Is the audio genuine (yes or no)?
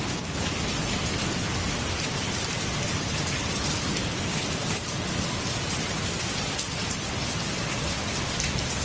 yes